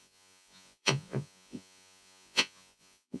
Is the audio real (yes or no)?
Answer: no